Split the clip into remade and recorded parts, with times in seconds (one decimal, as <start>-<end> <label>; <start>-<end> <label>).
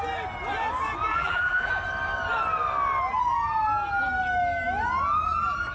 0.0-1.1 recorded; 1.1-1.7 remade; 1.7-5.7 recorded